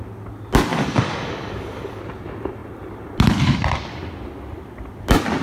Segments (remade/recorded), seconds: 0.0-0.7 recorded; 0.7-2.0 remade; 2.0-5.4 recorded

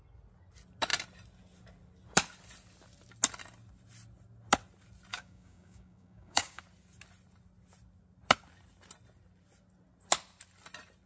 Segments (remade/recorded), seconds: 0.0-5.1 recorded; 5.1-6.6 remade; 6.6-11.1 recorded

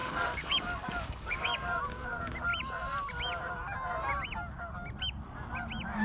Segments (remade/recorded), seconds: 0.0-1.8 remade; 1.8-6.0 recorded

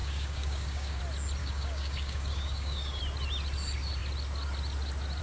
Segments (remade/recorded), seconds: 0.0-1.0 remade; 1.0-1.4 recorded; 1.4-3.0 remade; 3.0-5.2 recorded

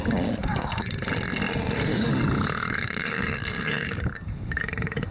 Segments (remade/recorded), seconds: 0.0-0.4 recorded; 0.4-0.9 remade; 0.9-1.9 recorded; 1.9-5.1 remade

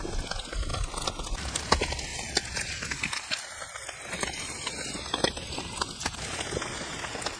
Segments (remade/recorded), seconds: 0.0-7.4 recorded

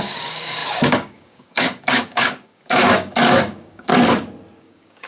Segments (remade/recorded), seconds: 0.0-3.9 remade; 3.9-4.6 recorded; 4.6-5.1 remade

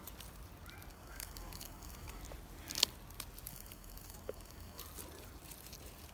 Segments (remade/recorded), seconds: 0.0-0.9 recorded; 0.9-2.2 remade; 2.2-3.5 recorded; 3.5-4.8 remade; 4.8-6.1 recorded